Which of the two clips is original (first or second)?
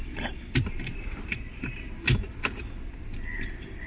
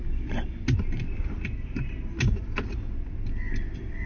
second